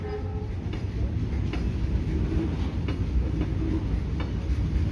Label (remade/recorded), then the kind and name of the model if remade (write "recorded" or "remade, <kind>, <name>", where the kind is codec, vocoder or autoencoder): recorded